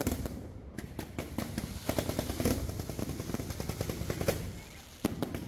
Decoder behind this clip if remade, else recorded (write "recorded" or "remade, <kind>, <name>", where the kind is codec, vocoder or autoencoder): recorded